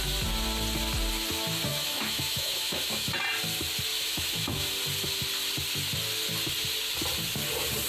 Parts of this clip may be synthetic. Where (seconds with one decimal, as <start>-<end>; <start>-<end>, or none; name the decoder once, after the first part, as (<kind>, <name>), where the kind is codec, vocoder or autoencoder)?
1.7-3.1 (autoencoder, DAC-VAE); 3.9-4.7